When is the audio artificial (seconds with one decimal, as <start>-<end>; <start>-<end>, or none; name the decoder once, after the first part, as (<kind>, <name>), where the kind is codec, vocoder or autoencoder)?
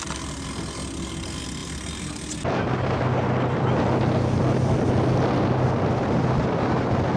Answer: none